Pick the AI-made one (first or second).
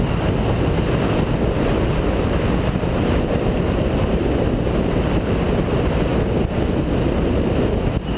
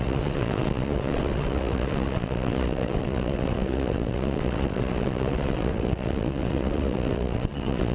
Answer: second